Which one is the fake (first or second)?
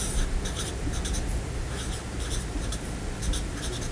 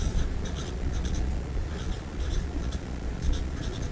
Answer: second